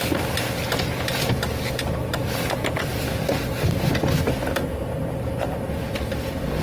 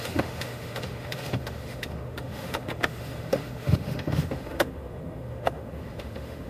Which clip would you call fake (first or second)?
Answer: second